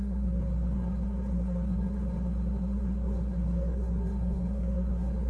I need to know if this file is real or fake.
fake